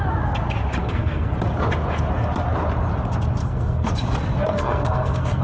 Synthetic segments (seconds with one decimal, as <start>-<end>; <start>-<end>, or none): 0.8-1.3; 3.4-3.9; 4.5-5.4